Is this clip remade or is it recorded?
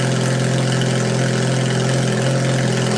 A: recorded